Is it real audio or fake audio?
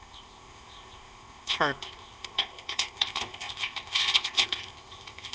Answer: fake